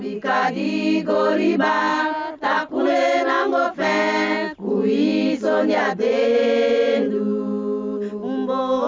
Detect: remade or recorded recorded